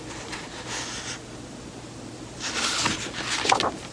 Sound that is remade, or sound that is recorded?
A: recorded